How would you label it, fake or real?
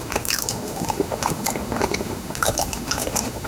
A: fake